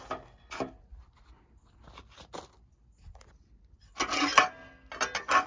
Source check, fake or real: real